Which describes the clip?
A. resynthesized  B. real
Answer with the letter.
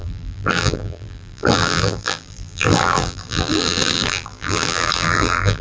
A